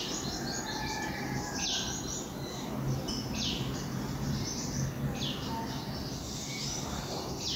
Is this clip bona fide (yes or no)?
yes